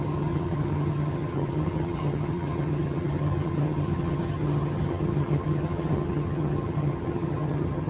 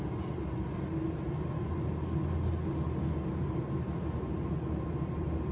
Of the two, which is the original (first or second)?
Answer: second